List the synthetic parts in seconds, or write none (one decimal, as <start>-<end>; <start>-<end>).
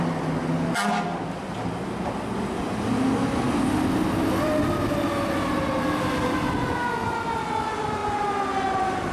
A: none